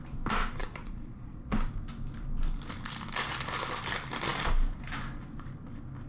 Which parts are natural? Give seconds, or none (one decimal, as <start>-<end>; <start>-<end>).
0.0-0.6; 1.5-6.1